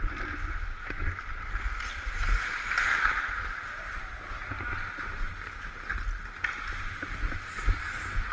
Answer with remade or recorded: recorded